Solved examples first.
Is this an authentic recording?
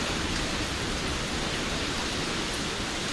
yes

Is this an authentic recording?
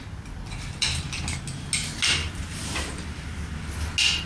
yes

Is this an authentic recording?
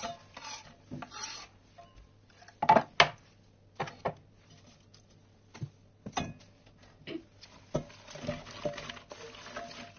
yes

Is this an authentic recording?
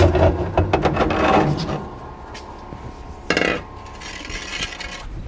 yes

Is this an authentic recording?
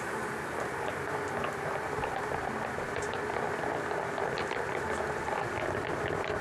yes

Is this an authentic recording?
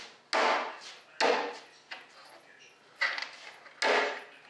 yes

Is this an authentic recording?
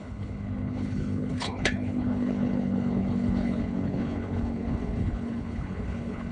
no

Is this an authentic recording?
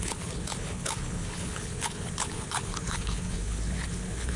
no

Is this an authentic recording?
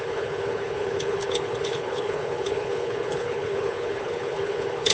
no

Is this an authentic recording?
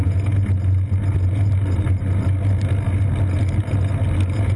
yes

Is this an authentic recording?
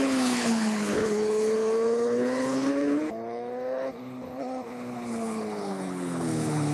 no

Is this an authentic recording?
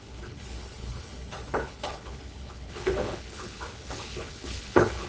no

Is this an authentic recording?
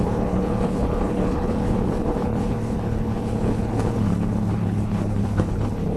no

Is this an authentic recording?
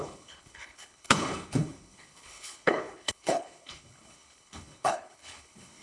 no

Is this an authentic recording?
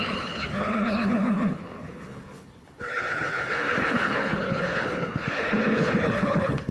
no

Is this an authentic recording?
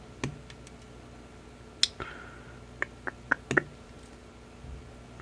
yes